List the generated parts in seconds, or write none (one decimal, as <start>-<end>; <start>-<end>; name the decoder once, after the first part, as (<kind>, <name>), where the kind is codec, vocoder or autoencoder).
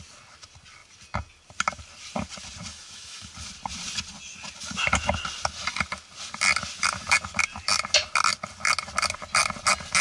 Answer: 2.7-3.3 (autoencoder, DAC-VAE)